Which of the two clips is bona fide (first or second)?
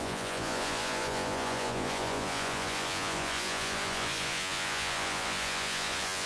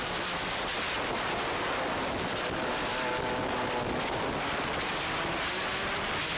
second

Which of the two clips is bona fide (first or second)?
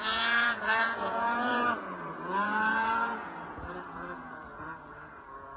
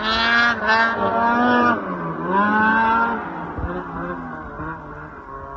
second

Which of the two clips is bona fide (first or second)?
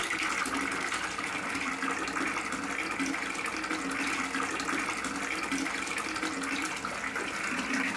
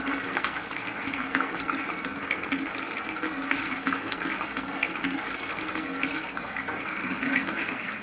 first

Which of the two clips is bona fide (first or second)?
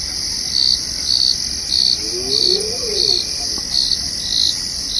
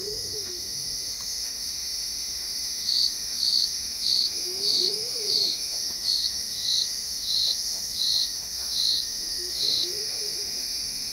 first